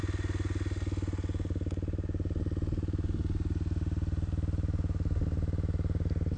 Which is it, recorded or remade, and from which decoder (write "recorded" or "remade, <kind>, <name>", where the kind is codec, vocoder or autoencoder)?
recorded